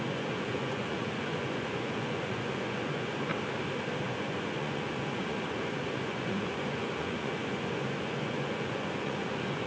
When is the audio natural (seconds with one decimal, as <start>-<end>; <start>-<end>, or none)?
3.3-4.0